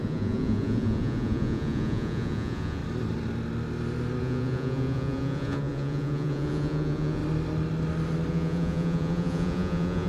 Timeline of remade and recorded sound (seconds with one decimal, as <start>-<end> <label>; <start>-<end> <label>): 0.0-2.8 remade; 2.8-4.2 recorded; 4.2-7.2 remade; 7.2-8.3 recorded; 8.3-10.1 remade